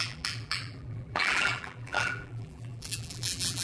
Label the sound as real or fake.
fake